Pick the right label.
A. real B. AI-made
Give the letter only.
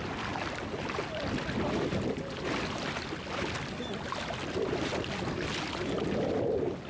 A